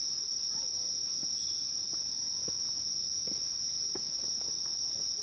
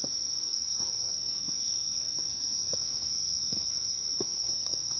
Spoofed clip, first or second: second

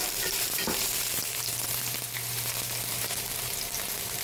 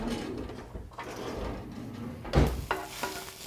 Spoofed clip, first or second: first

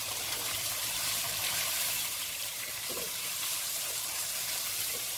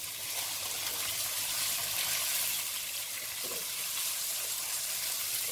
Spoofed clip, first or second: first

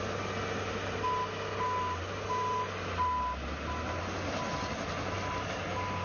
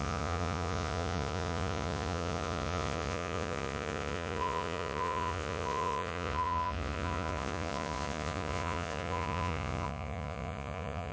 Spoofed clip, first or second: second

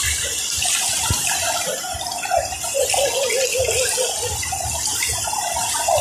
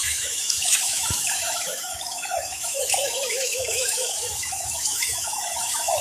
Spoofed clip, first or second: second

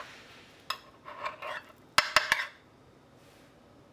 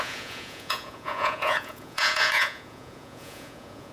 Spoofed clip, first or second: second